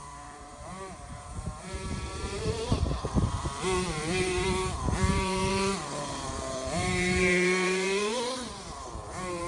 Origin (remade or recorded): remade